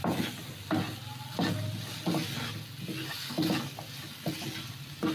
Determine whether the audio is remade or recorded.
recorded